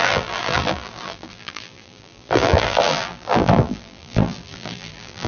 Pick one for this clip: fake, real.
fake